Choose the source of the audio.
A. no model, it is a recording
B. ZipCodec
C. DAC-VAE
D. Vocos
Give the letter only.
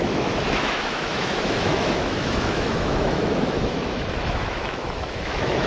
C